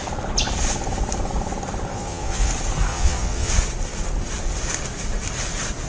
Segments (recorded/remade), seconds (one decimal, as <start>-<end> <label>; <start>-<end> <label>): 0.0-1.9 recorded; 1.9-2.5 remade; 2.5-2.9 recorded; 2.9-3.5 remade; 3.5-5.9 recorded